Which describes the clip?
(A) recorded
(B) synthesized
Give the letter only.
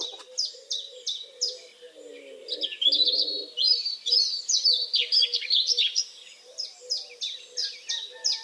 A